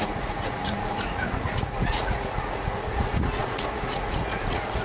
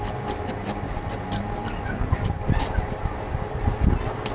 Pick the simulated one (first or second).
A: first